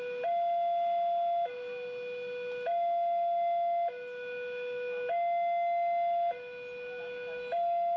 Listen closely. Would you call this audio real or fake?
real